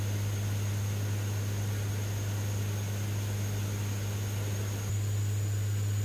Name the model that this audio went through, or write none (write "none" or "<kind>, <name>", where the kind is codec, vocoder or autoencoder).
none